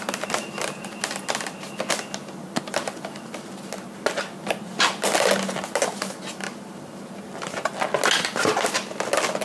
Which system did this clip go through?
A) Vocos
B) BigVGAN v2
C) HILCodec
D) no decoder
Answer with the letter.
D